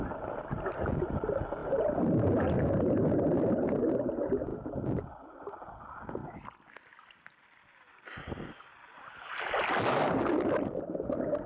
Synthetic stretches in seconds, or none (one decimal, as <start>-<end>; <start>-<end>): none